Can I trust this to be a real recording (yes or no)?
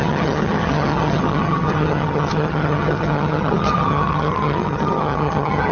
no